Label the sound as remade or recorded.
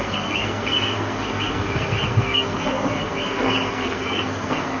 remade